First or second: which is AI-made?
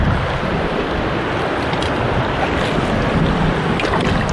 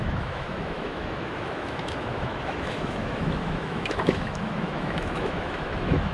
second